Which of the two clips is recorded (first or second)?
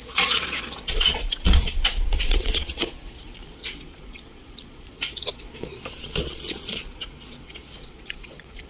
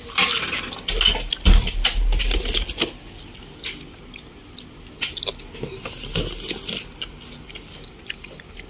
second